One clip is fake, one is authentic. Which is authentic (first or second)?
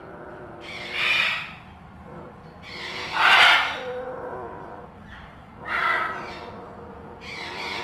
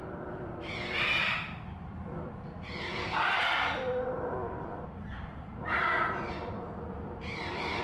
first